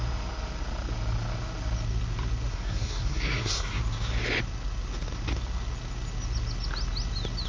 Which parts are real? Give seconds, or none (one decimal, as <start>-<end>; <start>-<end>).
0.0-2.5; 3.8-7.5